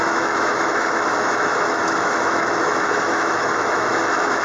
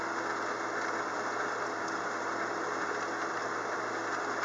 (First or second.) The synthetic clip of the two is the first